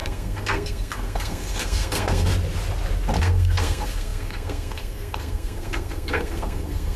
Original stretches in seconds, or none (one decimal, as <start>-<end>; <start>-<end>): 2.3-3.2